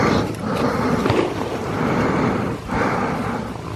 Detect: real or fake real